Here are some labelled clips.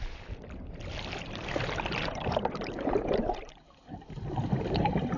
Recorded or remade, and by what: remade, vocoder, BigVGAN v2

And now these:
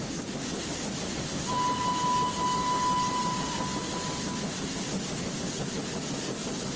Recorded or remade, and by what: recorded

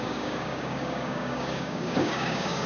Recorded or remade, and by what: remade, codec, DAC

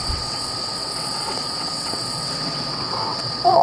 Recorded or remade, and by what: remade, vocoder, WaveNeXt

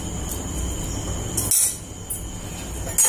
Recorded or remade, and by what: recorded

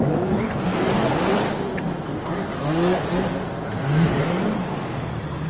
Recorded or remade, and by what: recorded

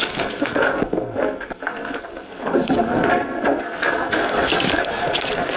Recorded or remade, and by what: remade, codec, SNAC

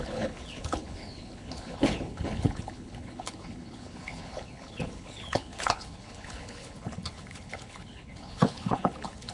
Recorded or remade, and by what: remade, codec, HILCodec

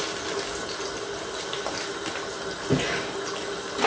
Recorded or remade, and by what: recorded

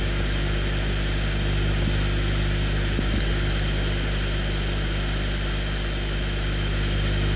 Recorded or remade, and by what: recorded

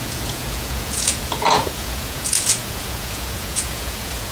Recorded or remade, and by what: remade, vocoder, Vocos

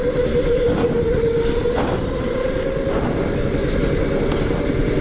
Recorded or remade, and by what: recorded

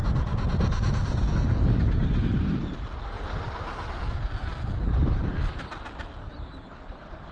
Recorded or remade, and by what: recorded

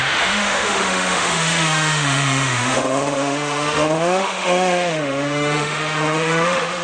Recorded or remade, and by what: remade, autoencoder, DAC-VAE